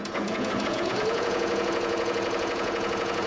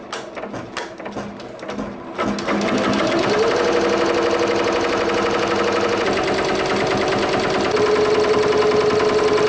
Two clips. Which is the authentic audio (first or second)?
second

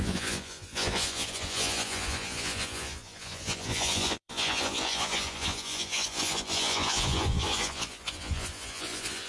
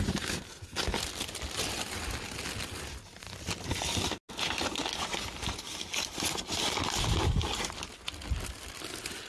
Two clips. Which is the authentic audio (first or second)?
second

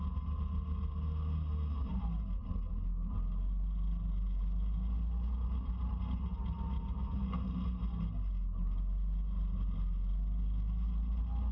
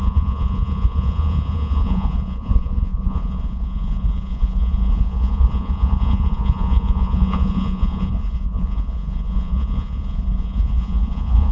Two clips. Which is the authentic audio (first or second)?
first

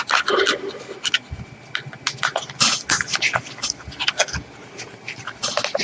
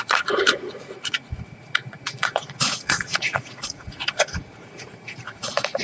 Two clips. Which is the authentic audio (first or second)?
first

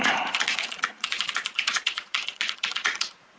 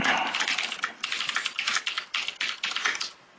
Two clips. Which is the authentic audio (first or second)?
second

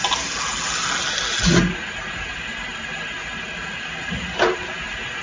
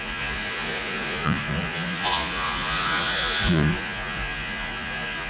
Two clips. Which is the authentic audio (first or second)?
first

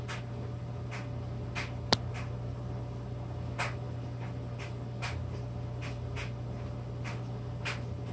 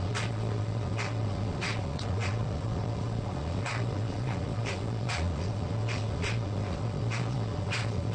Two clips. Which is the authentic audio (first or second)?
first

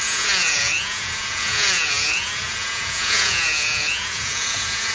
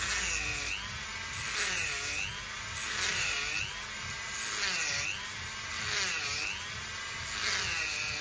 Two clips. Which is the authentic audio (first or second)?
second